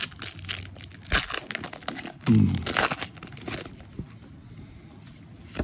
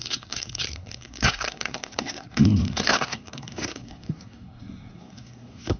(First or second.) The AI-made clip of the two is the second